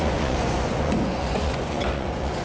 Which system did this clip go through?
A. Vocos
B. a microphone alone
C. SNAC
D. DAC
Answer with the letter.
A